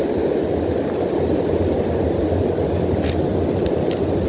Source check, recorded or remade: recorded